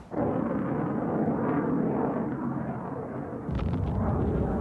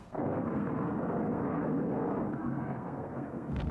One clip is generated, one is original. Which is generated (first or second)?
second